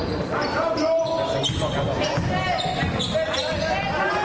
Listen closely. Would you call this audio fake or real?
real